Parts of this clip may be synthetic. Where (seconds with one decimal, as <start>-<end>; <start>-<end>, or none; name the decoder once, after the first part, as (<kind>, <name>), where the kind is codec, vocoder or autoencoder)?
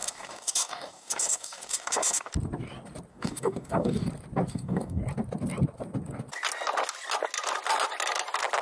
0.0-2.3 (codec, DAC); 3.1-4.1; 4.5-5.0